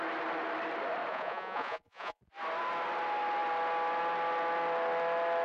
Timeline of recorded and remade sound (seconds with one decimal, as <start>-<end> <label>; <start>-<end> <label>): 0.0-1.1 recorded; 1.1-2.2 remade; 2.2-5.4 recorded